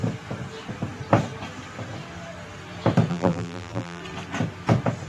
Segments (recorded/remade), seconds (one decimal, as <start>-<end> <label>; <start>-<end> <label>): 0.0-3.1 recorded; 3.1-4.0 remade; 4.0-5.1 recorded